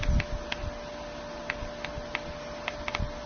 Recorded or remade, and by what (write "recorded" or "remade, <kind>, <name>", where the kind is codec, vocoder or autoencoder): recorded